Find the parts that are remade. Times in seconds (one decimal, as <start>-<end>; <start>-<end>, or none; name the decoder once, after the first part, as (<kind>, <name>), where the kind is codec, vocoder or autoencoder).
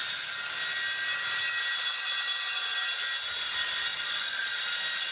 3.9-4.6 (vocoder, Vocos)